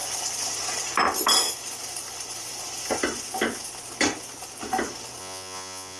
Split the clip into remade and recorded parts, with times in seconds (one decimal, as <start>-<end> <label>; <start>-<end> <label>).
0.0-5.2 recorded; 5.2-6.0 remade